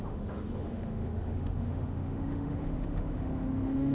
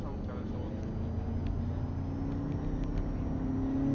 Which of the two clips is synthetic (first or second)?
first